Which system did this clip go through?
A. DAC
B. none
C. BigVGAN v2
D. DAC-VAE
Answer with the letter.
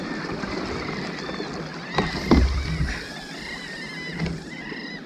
B